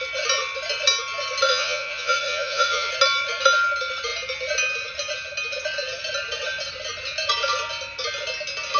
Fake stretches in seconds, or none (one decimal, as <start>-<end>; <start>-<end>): 1.5-2.9